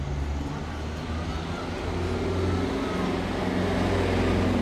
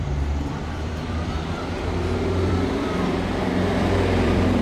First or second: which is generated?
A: second